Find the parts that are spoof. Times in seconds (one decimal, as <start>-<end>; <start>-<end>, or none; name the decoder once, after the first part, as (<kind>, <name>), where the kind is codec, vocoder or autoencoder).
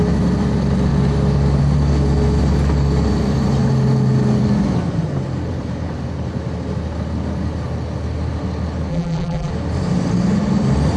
8.9-9.5 (vocoder, BigVGAN v2)